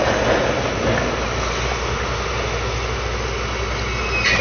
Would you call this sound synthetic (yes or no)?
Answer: no